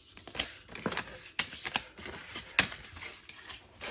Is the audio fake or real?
real